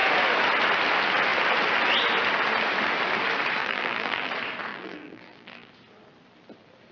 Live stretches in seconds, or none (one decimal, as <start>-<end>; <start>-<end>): 0.0-3.6; 4.3-4.7; 5.7-6.9

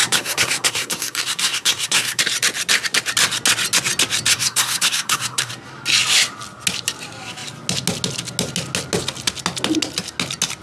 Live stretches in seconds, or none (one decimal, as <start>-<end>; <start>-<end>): 2.2-4.3; 5.5-10.6

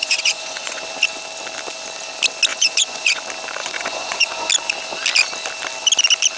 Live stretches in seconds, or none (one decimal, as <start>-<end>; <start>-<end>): 0.8-2.5; 3.2-3.6; 4.5-6.4

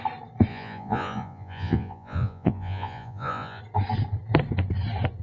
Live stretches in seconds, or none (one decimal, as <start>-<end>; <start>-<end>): 0.0-0.5; 3.6-5.2

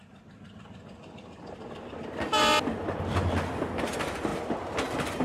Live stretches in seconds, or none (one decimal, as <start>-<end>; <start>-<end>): 0.0-5.2